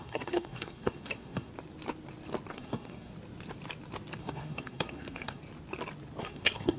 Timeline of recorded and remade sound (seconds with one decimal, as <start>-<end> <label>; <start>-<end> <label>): 0.0-1.5 remade; 1.5-2.5 recorded; 2.5-3.1 remade; 3.1-4.2 recorded; 4.2-5.4 remade; 5.4-6.2 recorded; 6.2-6.8 remade